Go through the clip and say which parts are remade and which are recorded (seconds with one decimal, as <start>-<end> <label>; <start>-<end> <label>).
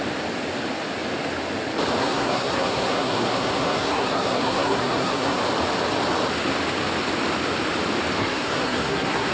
0.0-2.0 recorded; 2.0-5.4 remade; 5.4-8.2 recorded; 8.2-9.3 remade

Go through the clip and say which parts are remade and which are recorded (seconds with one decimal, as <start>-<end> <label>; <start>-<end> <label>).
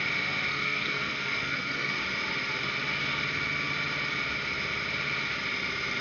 0.0-0.5 recorded; 0.5-2.0 remade; 2.0-6.0 recorded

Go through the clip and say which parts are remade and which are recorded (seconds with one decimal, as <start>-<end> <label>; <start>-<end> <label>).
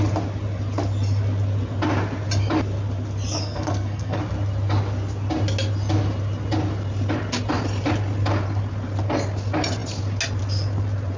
0.0-3.4 recorded; 3.4-4.2 remade; 4.2-11.2 recorded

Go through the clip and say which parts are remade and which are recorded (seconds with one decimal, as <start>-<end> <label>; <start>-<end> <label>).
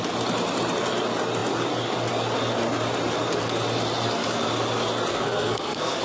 0.0-5.1 recorded; 5.1-6.0 remade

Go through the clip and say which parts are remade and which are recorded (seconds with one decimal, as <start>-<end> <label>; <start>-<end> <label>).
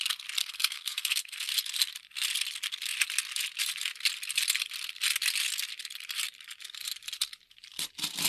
0.0-0.4 recorded; 0.4-1.5 remade; 1.5-8.3 recorded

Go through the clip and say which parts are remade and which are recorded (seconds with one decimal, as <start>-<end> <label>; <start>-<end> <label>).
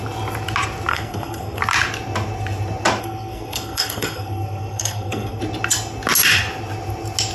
0.0-0.9 recorded; 0.9-1.6 remade; 1.6-3.0 recorded; 3.0-5.4 remade; 5.4-7.3 recorded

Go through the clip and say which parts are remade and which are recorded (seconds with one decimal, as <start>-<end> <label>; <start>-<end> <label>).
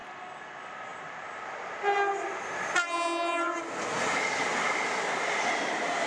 0.0-6.1 recorded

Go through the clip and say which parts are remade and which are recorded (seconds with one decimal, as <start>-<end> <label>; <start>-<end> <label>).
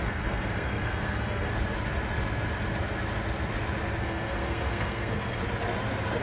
0.0-1.5 remade; 1.5-4.0 recorded; 4.0-5.4 remade; 5.4-6.2 recorded